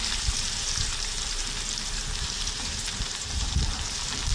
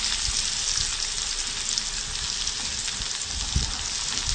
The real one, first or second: second